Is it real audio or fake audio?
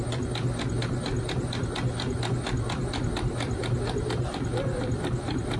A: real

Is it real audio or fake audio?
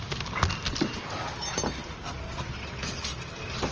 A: real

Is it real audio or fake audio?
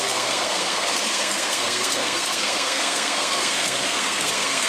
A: fake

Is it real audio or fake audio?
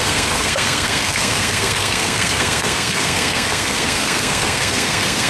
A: fake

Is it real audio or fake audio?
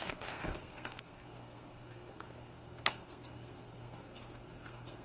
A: fake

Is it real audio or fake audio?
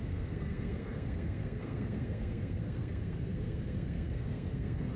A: fake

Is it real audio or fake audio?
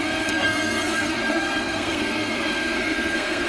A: fake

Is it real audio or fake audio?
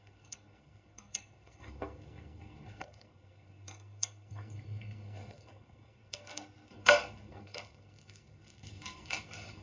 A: fake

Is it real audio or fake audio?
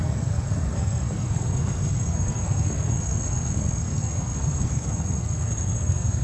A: fake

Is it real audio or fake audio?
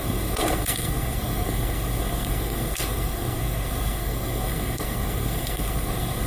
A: fake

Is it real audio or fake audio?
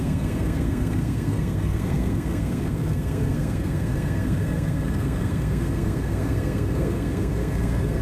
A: fake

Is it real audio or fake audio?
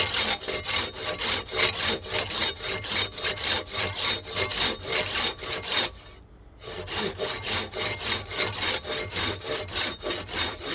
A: real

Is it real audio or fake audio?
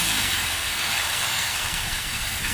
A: fake